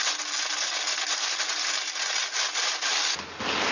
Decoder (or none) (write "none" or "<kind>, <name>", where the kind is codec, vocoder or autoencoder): none